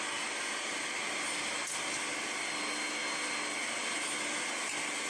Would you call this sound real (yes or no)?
yes